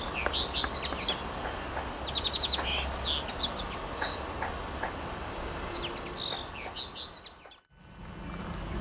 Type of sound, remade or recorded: recorded